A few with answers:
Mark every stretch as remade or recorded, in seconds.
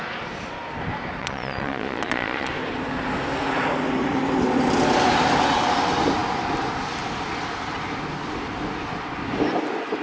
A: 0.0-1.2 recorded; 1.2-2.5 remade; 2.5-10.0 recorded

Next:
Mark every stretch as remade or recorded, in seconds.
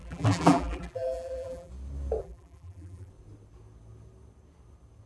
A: 0.0-1.7 remade; 1.7-2.2 recorded; 2.2-3.1 remade; 3.1-5.1 recorded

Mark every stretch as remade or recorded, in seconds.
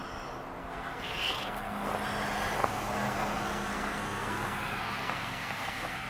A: 0.0-0.6 recorded; 0.6-1.9 remade; 1.9-2.6 recorded; 2.6-6.1 remade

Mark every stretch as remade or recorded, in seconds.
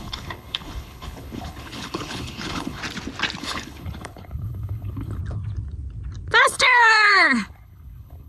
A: 0.0-2.8 remade; 2.8-3.4 recorded; 3.4-5.2 remade; 5.2-6.4 recorded; 6.4-8.3 remade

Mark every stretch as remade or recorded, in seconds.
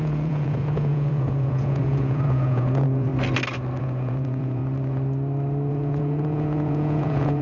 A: 0.0-3.1 remade; 3.1-3.8 recorded; 3.8-4.6 remade; 4.6-5.7 recorded; 5.7-7.4 remade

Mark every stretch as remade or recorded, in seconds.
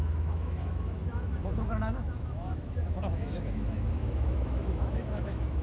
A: 0.0-5.6 remade